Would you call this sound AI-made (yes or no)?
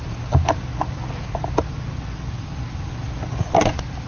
no